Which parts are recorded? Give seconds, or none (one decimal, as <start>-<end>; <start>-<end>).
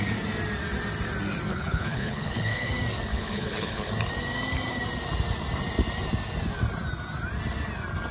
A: 0.0-1.5; 2.7-3.1; 3.9-8.1